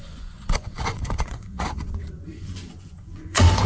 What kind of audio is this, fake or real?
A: fake